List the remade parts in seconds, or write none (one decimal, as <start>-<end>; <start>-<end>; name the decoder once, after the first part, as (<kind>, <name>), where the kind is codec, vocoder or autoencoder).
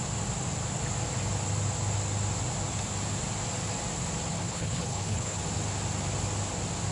4.3-5.4 (codec, HILCodec)